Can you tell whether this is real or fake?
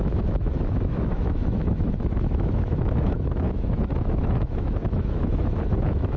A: fake